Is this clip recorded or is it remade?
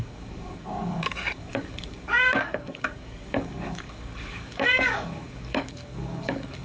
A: remade